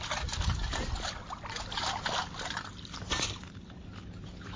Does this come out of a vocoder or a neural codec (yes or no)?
no